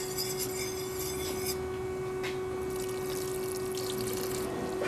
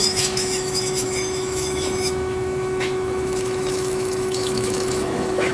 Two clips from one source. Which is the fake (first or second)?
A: second